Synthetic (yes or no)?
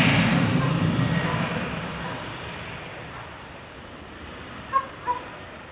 no